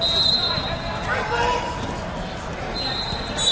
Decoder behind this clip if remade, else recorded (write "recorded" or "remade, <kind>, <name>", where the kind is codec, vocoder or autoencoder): recorded